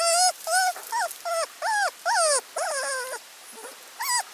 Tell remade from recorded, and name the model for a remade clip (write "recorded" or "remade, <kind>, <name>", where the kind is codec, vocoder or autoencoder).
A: recorded